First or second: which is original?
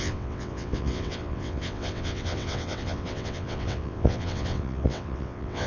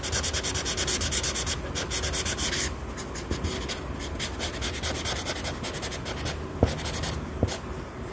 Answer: second